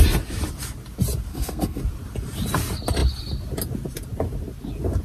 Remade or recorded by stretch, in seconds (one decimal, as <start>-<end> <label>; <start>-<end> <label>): 0.0-1.3 recorded; 1.3-1.8 remade; 1.8-5.0 recorded